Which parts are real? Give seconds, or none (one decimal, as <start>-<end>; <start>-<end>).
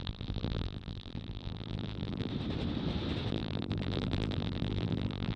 2.3-3.3